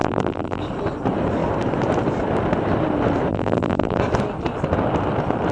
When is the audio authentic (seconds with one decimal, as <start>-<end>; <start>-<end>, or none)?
0.6-3.3; 4.0-5.5